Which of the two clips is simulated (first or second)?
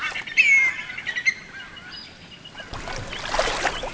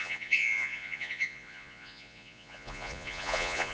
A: second